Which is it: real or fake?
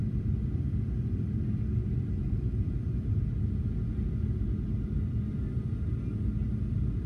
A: real